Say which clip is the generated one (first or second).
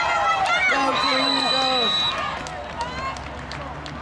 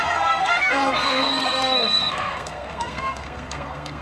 second